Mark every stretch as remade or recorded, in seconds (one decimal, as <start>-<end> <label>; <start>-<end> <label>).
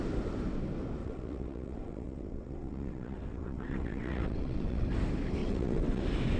0.0-1.0 recorded; 1.0-4.8 remade; 4.8-5.4 recorded; 5.4-6.0 remade; 6.0-6.4 recorded